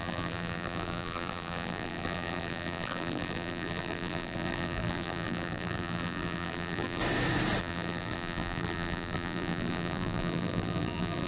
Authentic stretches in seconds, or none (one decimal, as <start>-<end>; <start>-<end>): 7.0-7.6